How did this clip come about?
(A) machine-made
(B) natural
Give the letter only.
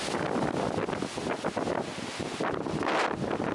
B